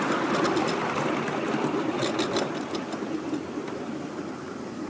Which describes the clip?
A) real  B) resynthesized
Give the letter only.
A